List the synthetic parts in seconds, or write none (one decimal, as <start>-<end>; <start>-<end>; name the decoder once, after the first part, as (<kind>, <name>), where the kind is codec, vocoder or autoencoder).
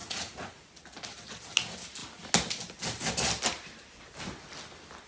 0.0-0.7 (vocoder, Vocos)